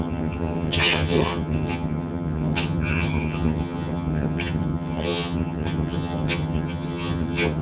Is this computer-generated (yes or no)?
yes